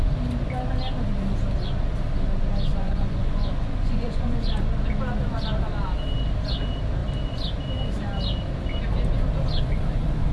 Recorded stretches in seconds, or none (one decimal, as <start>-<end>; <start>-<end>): 0.0-2.7; 4.6-10.3